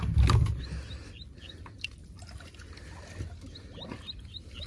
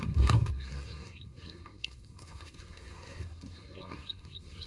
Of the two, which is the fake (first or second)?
second